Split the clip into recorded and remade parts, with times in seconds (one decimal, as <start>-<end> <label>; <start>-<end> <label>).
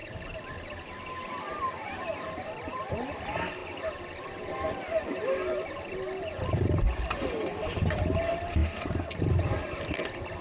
0.0-10.4 recorded